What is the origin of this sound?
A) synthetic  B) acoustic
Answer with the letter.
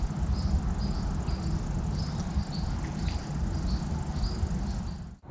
B